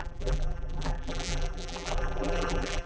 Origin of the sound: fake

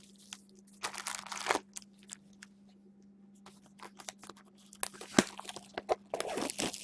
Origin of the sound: real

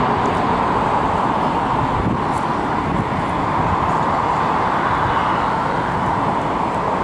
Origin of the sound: real